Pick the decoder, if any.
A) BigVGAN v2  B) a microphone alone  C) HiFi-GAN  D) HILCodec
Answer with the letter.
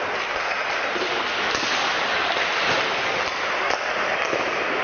B